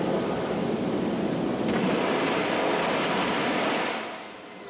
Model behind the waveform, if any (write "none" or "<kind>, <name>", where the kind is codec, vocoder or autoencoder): none